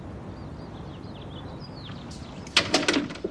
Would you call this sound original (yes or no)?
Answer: yes